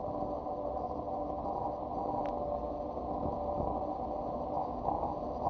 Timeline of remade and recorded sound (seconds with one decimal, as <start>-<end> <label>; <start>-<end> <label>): 0.0-4.6 recorded; 4.6-5.1 remade; 5.1-5.5 recorded